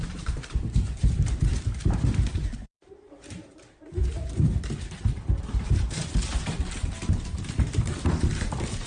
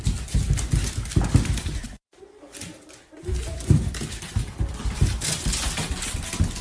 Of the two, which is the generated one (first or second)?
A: first